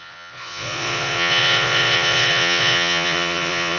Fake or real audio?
fake